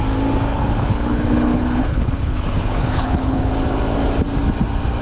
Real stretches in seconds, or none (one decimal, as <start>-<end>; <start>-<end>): 0.0-0.5; 3.5-5.0

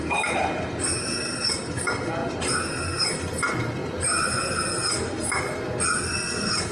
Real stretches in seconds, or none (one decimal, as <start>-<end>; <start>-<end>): 0.0-6.7

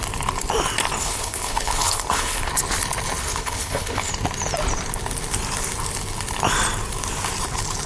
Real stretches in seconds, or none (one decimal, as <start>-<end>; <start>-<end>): 0.0-1.0; 2.5-3.2; 4.1-7.9

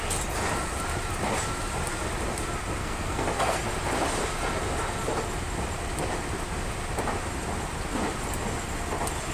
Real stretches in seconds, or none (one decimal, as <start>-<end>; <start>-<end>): 0.0-2.8; 3.6-9.3

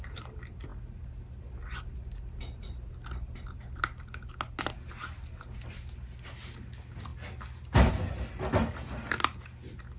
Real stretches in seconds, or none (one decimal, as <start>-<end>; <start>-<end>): 0.0-10.0

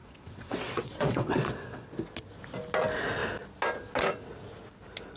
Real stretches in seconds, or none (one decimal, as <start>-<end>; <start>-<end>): 1.9-5.2